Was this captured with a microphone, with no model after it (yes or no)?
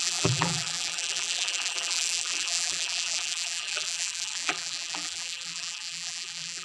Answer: no